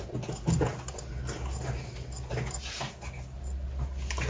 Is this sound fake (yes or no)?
no